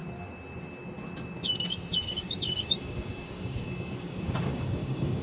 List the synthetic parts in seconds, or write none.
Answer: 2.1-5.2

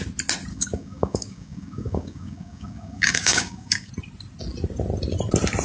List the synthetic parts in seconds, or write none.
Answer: 0.5-3.9

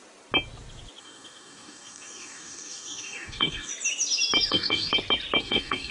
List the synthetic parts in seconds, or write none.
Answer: 1.0-3.7; 4.5-4.9; 5.4-5.9

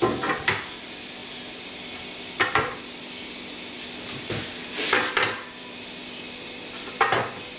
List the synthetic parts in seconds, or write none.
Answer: none

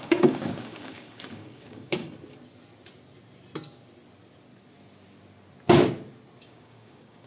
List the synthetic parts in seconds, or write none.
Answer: 0.0-2.0; 6.4-7.3

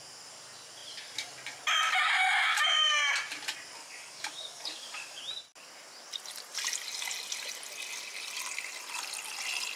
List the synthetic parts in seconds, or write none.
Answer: 3.8-5.2

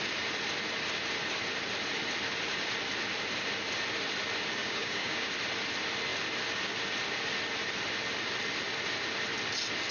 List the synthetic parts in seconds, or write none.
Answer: 4.6-5.3